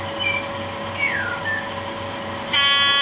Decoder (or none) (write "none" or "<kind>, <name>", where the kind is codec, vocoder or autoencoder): none